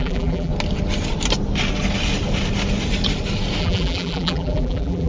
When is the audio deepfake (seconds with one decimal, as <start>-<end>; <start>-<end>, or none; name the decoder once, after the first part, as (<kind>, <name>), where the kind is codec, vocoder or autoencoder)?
0.0-0.5 (vocoder, BigVGAN v2); 3.6-5.1

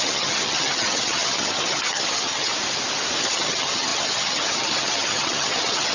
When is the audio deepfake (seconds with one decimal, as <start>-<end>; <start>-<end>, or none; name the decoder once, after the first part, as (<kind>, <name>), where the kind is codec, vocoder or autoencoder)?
0.0-2.5 (vocoder, HiFi-GAN); 3.2-5.9

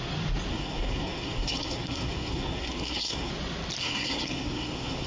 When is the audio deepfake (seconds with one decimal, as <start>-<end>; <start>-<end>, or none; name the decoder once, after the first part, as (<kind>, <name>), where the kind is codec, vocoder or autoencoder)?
0.5-3.3 (codec, SNAC); 3.8-5.1